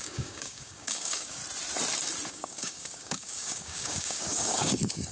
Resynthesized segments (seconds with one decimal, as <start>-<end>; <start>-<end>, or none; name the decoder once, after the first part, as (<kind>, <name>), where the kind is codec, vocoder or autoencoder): 0.0-1.4 (codec, DAC); 2.3-5.1